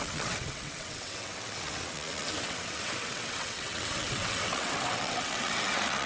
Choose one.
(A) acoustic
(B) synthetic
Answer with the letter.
B